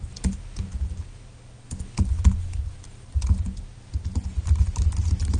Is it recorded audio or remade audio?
recorded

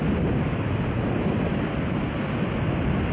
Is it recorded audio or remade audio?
recorded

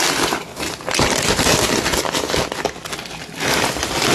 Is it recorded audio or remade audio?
recorded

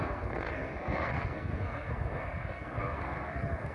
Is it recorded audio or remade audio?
remade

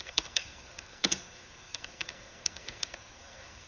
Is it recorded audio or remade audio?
remade